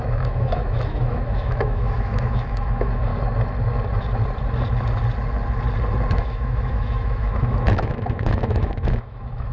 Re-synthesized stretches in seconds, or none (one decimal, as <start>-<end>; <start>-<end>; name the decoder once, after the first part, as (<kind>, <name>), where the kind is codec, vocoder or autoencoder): 0.0-3.1 (autoencoder, DAC-VAE); 6.1-9.5